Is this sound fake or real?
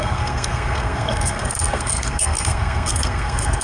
fake